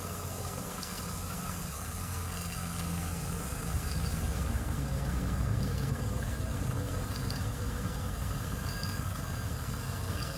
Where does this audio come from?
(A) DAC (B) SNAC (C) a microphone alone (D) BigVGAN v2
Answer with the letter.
B